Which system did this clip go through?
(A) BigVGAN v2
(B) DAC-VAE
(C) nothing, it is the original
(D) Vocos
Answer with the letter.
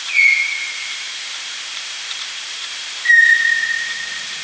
A